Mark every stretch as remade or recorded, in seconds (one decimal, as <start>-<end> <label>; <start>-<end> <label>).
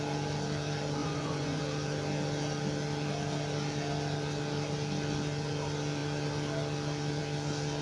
0.0-1.0 recorded; 1.0-1.6 remade; 1.6-7.8 recorded